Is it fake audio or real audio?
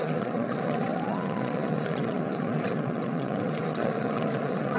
fake